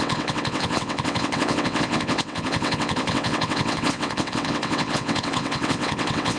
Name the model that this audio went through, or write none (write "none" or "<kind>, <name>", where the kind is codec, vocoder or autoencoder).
vocoder, WaveNeXt